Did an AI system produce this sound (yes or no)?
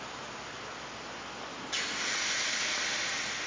no